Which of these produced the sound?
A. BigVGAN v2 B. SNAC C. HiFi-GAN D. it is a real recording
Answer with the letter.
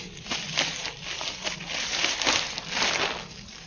D